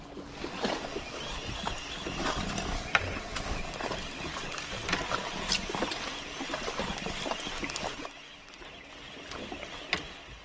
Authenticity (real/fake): real